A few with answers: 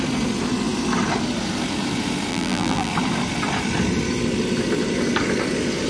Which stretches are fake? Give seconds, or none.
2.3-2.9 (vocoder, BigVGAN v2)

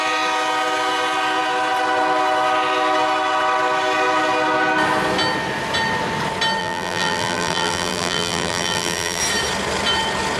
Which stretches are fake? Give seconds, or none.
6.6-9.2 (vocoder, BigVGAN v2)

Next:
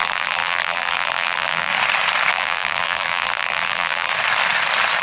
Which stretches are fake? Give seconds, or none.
0.0-1.7 (vocoder, BigVGAN v2); 2.3-4.1

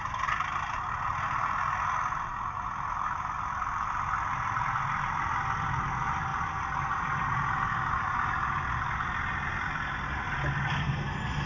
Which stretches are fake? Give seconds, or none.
none

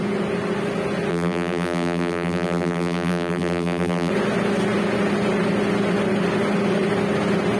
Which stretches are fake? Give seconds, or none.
1.1-4.1 (vocoder, BigVGAN v2)